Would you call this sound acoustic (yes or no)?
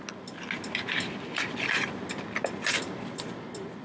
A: yes